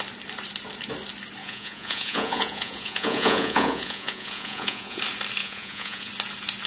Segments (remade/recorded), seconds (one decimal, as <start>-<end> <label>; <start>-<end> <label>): 0.0-1.4 recorded; 1.4-5.0 remade; 5.0-5.4 recorded; 5.4-6.1 remade; 6.1-6.7 recorded